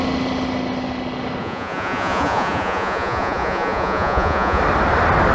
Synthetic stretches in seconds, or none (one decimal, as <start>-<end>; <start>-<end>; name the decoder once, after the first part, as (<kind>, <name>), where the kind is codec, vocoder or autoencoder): 1.4-4.6 (vocoder, Vocos)